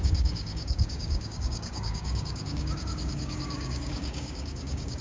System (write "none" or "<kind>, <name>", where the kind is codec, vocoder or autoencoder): codec, DAC